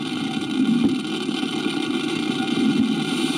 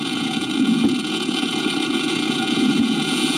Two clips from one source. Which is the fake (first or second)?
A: second